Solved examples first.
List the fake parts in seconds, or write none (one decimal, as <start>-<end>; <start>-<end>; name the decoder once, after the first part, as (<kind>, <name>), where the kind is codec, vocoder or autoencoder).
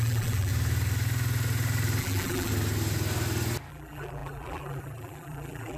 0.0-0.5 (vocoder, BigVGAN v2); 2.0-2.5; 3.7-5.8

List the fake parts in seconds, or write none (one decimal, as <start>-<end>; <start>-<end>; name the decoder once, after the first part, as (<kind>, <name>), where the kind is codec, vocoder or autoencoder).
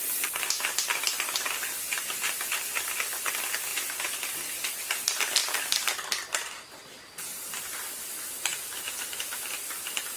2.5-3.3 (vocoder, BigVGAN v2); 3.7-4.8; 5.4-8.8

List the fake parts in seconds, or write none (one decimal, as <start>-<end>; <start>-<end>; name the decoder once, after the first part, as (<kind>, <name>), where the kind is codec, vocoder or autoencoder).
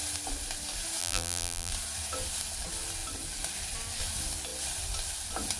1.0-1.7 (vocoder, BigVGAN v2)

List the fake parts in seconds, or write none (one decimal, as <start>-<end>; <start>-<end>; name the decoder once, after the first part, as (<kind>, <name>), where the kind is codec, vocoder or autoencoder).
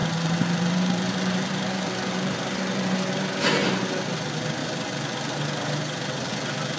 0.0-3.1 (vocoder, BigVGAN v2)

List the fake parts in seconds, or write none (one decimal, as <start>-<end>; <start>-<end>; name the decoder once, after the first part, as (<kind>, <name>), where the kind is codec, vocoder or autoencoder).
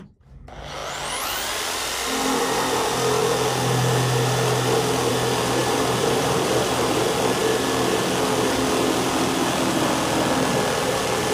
5.6-7.0 (vocoder, BigVGAN v2)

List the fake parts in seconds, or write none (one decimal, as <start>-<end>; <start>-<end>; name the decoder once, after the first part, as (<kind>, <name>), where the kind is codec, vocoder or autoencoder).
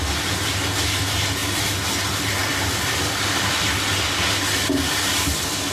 2.5-3.7 (vocoder, BigVGAN v2)